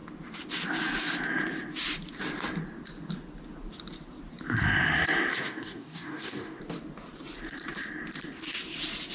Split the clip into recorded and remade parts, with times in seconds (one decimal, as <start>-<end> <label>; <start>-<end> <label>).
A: 0.0-5.3 recorded; 5.3-6.6 remade; 6.6-9.1 recorded